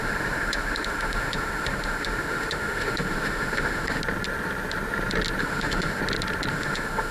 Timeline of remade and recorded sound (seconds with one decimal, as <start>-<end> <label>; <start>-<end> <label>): 0.0-4.0 remade; 4.0-5.4 recorded; 5.4-6.0 remade; 6.0-6.5 recorded; 6.5-7.1 remade